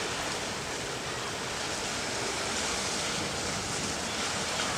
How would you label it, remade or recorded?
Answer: recorded